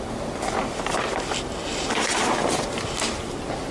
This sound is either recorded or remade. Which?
recorded